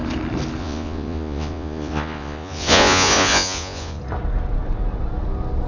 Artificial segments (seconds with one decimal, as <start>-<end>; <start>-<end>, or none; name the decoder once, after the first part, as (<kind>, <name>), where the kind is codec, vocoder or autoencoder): 0.6-4.0 (vocoder, Vocos)